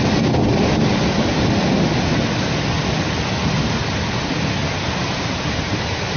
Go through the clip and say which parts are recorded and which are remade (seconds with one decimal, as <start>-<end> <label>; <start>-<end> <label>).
0.0-6.2 recorded